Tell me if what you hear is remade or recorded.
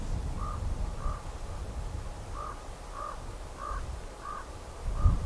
recorded